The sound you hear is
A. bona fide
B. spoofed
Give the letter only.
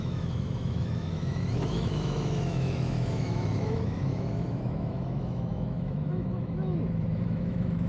B